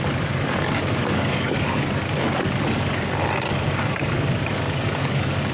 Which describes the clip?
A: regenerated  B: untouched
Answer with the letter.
A